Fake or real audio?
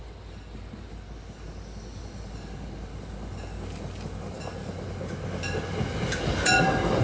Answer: real